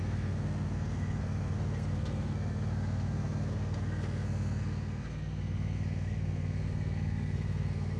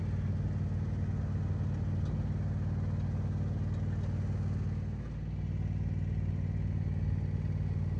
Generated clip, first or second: first